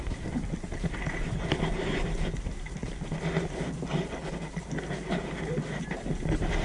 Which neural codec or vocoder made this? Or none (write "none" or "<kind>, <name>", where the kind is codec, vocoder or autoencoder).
none